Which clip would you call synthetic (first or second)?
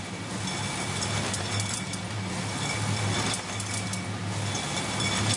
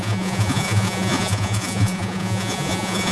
second